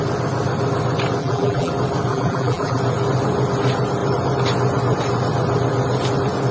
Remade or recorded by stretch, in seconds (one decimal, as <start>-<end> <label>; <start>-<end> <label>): 0.0-1.2 recorded; 1.2-1.7 remade; 1.7-2.1 recorded; 2.1-2.8 remade; 2.8-6.5 recorded